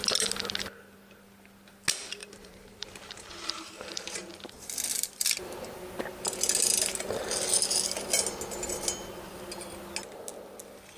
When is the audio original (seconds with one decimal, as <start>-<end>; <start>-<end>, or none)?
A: 0.0-2.2; 4.3-11.0